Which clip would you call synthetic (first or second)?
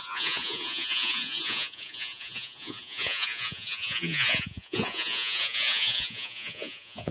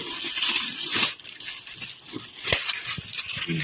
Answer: first